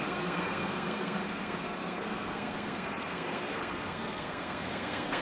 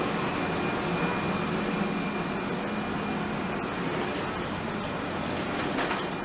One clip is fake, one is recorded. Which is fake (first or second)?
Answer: first